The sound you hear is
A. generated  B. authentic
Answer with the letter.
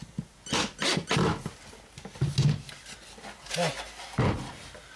B